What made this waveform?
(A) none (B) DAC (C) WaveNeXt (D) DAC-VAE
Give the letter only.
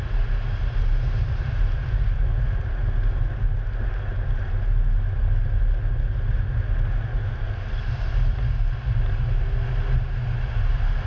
A